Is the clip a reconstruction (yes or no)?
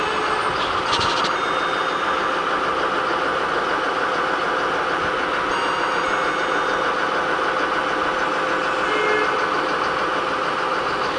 no